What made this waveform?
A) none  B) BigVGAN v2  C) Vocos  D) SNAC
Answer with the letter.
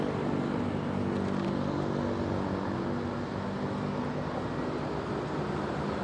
A